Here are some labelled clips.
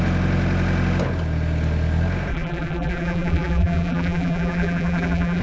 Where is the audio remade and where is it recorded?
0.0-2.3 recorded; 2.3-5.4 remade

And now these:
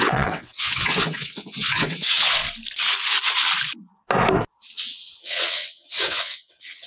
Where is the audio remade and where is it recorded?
0.0-2.4 remade; 2.4-4.7 recorded; 4.7-6.9 remade

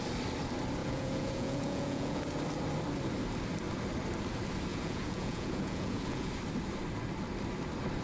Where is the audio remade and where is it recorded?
0.0-0.8 recorded; 0.8-2.2 remade; 2.2-4.7 recorded; 4.7-6.3 remade; 6.3-8.0 recorded

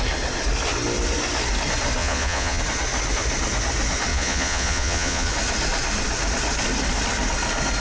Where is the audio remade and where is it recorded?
0.0-2.0 recorded; 2.0-2.6 remade; 2.6-4.1 recorded; 4.1-5.3 remade; 5.3-7.8 recorded

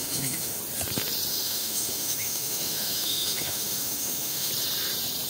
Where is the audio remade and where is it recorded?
0.0-0.6 remade; 0.6-1.3 recorded; 1.3-4.5 remade; 4.5-5.3 recorded

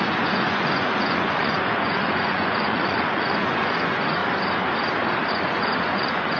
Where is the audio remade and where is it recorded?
0.0-4.2 remade; 4.2-5.3 recorded; 5.3-6.4 remade